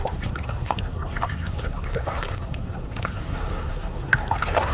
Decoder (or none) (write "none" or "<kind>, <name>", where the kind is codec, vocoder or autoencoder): codec, SNAC